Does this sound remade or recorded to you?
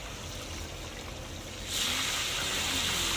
recorded